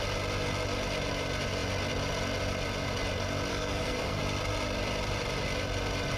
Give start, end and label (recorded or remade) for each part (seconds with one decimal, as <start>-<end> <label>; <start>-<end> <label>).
0.0-3.5 recorded; 3.5-4.2 remade; 4.2-6.2 recorded